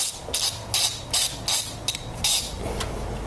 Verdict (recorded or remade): recorded